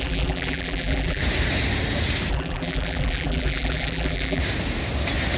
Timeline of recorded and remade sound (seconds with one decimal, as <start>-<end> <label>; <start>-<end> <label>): 0.0-1.2 remade; 1.2-2.3 recorded; 2.3-4.4 remade; 4.4-5.4 recorded